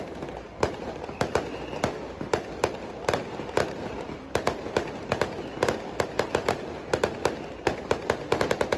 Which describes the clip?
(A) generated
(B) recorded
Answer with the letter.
B